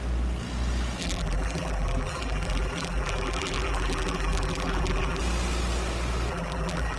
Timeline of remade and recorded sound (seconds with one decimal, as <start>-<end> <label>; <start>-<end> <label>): 0.0-1.0 recorded; 1.0-5.2 remade; 5.2-6.3 recorded; 6.3-7.0 remade